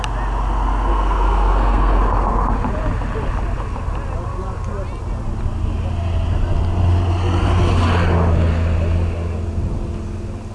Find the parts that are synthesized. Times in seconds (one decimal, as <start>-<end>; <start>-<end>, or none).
0.9-2.0